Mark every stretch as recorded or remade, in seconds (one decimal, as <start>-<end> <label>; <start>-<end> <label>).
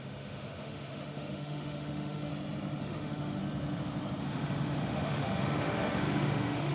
0.0-2.3 remade; 2.3-2.8 recorded; 2.8-3.4 remade; 3.4-4.2 recorded; 4.2-6.7 remade